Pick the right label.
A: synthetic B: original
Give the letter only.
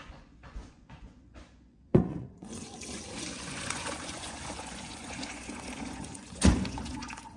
A